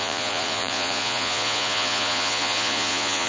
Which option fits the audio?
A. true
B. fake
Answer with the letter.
B